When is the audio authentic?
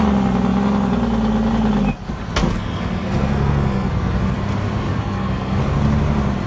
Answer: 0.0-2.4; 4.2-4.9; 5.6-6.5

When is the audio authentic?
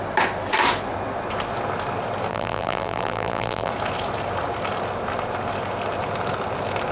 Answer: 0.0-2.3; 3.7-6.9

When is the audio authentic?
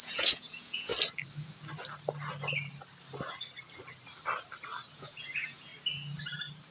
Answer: 0.9-4.9; 5.7-6.7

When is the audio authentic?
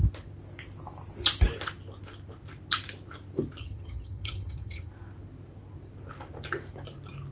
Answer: 0.0-3.6; 4.9-7.3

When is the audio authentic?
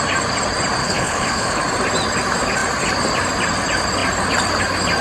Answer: 0.0-0.8; 1.6-5.0